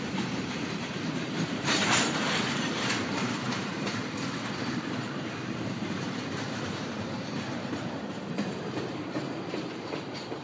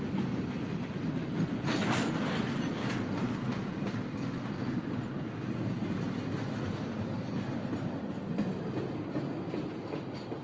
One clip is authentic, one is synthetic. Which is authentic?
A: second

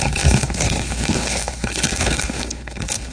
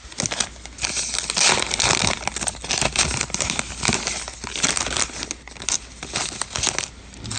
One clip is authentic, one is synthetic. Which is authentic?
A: second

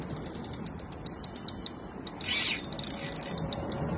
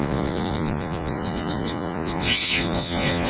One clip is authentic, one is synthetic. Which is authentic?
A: first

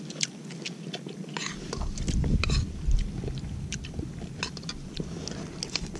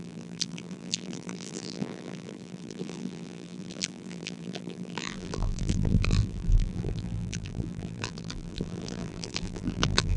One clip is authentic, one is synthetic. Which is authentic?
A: first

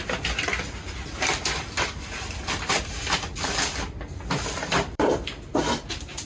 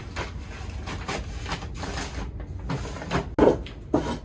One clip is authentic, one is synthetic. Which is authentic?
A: second